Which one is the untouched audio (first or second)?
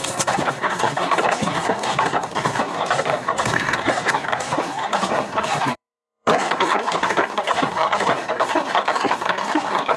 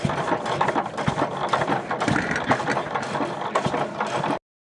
second